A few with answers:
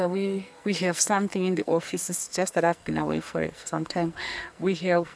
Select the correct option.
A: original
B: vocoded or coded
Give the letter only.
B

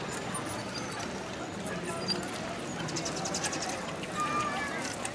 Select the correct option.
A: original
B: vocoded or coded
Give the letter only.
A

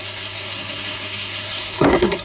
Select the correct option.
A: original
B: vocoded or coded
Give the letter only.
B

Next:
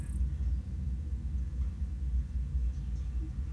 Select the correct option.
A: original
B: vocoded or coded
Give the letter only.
A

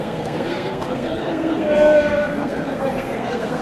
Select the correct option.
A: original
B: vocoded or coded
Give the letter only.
B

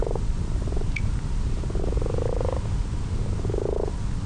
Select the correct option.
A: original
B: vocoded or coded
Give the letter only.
A